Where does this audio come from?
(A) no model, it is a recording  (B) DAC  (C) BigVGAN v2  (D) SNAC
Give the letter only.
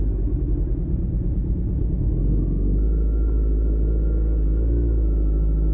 A